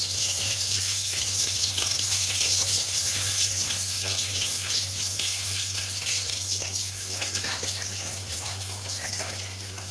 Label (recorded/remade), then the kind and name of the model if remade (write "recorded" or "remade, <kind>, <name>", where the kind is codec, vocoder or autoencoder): remade, codec, SNAC